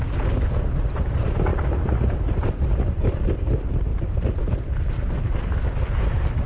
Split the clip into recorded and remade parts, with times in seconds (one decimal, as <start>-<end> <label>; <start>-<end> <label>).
0.0-6.5 recorded